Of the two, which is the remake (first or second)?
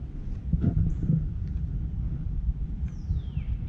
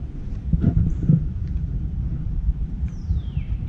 second